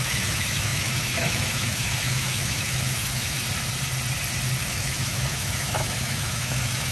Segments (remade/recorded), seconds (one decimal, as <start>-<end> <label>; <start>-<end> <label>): 0.0-3.4 remade; 3.4-4.6 recorded; 4.6-6.9 remade